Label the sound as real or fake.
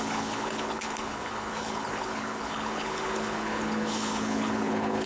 fake